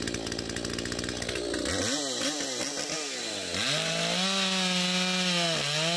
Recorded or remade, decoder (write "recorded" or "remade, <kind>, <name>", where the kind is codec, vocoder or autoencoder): recorded